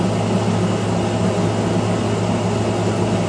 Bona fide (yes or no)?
yes